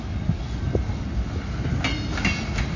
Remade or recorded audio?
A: recorded